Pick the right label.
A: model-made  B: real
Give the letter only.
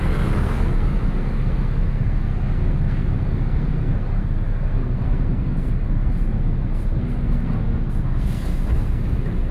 A